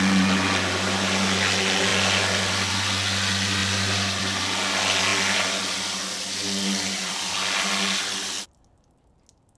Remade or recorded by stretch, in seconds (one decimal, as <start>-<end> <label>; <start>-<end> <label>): 0.0-3.6 recorded; 3.6-4.4 remade; 4.4-9.6 recorded